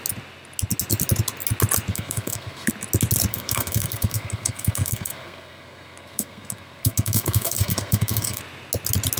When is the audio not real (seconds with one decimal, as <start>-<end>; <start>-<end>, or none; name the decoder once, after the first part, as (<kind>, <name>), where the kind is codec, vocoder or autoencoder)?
1.9-2.7 (codec, SNAC); 3.3-8.4